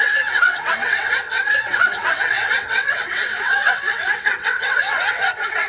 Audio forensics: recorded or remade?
remade